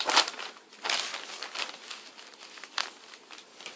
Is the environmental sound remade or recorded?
recorded